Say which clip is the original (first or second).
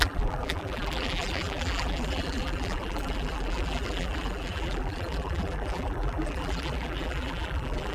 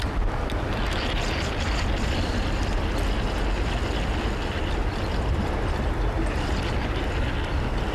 second